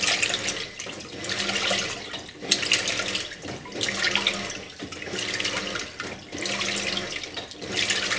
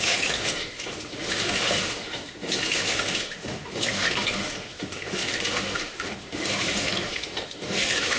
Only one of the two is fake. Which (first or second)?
second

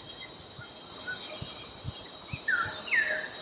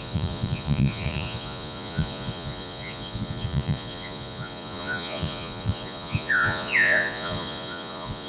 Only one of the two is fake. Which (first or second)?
second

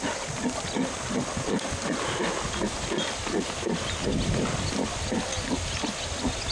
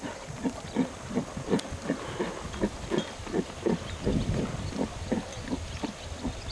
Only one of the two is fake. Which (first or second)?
second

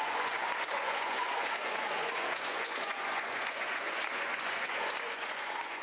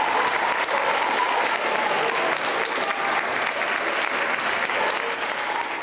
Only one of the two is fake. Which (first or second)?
first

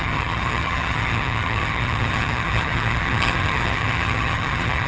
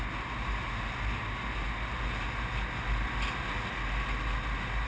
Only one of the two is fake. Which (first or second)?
first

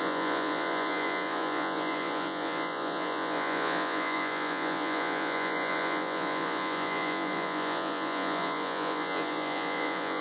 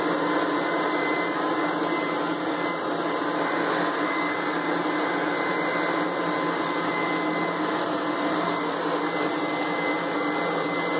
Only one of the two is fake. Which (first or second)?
first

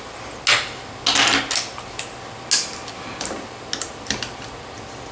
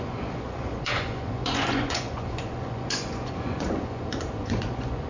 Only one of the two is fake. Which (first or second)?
second